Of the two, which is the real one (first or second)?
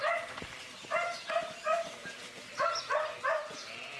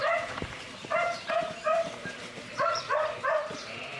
first